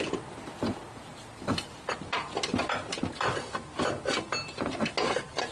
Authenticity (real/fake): real